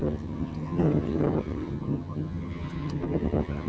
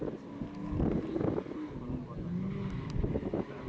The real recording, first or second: second